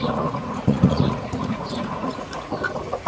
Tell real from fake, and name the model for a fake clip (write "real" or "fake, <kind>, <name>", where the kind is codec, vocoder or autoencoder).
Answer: fake, vocoder, Vocos